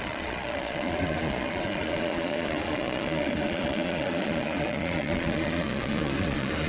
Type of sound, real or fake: fake